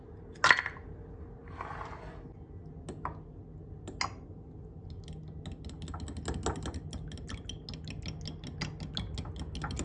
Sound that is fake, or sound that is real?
real